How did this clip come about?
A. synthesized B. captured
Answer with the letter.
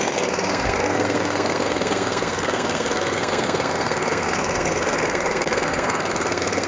A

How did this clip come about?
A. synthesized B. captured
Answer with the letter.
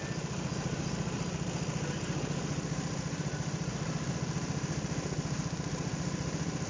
B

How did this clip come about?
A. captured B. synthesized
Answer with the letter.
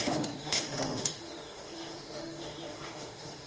B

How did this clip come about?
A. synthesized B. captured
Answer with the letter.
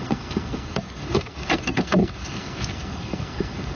A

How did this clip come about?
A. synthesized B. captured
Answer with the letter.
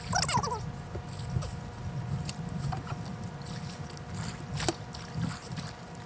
B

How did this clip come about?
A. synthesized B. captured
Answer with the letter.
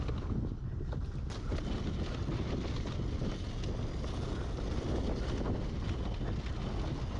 B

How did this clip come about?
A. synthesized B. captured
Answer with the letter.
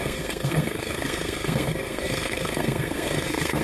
A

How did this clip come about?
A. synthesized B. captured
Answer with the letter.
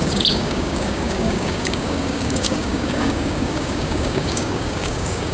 A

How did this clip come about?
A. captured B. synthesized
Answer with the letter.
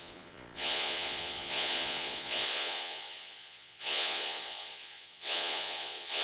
B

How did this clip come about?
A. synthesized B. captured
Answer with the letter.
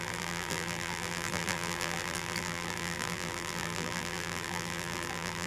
A